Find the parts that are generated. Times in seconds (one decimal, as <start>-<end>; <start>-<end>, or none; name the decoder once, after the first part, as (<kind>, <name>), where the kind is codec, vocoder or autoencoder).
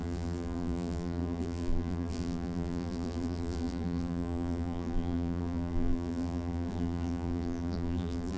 0.0-8.4 (vocoder, BigVGAN v2)